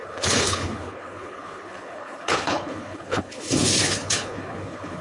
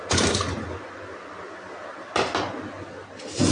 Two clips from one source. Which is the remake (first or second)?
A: first